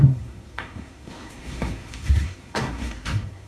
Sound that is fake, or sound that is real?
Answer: fake